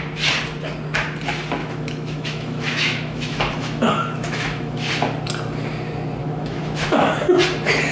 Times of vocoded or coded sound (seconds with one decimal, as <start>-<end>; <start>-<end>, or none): 1.6-4.9; 6.2-7.1